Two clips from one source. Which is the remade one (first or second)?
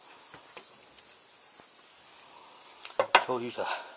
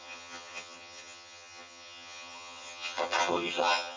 second